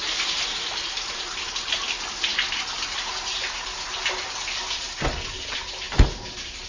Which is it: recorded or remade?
recorded